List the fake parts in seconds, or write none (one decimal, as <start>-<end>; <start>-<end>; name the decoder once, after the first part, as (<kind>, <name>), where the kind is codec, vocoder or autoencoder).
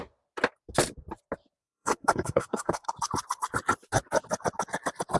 1.6-2.9 (codec, SNAC)